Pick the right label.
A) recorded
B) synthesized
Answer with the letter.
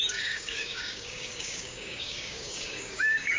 B